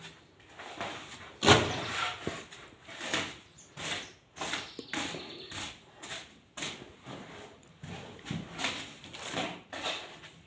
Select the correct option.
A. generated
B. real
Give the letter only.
B